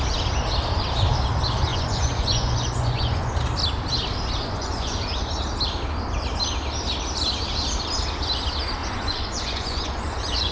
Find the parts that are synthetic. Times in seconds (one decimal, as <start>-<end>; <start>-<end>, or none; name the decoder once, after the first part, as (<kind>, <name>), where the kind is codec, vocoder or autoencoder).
1.7-3.3 (vocoder, Vocos); 4.4-5.0; 8.8-10.5